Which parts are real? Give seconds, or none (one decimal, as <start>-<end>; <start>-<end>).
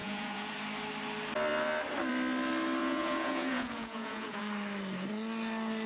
0.5-2.8; 4.4-5.9